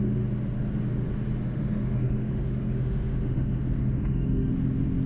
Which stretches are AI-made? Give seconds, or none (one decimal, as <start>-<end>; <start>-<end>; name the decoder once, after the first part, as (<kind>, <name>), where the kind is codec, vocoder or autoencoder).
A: 1.4-4.5 (autoencoder, DAC-VAE)